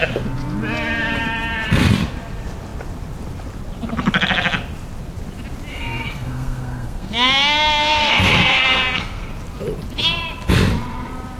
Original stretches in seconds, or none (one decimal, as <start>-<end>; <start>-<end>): 0.0-5.7; 9.3-11.4